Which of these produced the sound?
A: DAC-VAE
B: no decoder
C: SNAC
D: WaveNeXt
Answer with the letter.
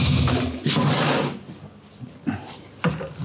B